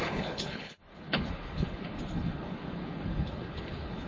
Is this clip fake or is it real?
fake